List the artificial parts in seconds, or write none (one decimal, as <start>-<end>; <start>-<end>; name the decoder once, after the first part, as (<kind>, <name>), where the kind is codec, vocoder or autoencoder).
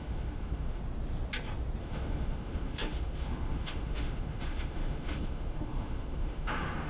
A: 0.0-0.8 (autoencoder, DAC-VAE); 1.8-6.9